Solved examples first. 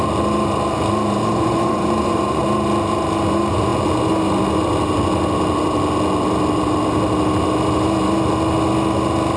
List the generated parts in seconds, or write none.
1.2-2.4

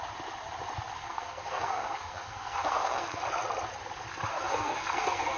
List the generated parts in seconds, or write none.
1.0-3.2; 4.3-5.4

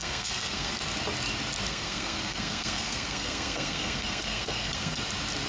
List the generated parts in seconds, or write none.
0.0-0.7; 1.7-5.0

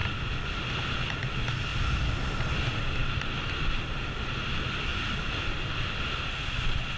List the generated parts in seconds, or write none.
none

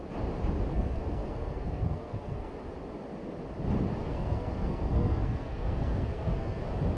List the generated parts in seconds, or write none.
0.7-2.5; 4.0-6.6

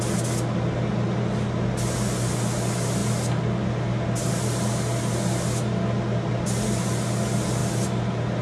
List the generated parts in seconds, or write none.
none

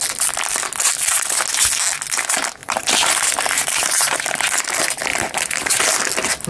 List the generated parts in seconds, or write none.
2.6-4.4; 5.1-5.8